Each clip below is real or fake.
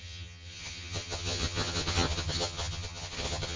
fake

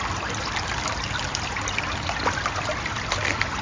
real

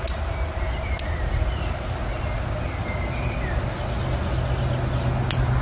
real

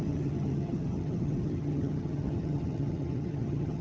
fake